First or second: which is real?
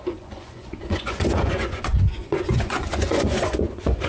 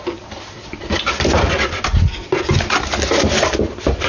second